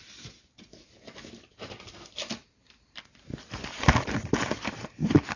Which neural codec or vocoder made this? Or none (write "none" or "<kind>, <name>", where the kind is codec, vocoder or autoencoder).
none